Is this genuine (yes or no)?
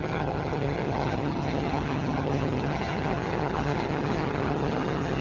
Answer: no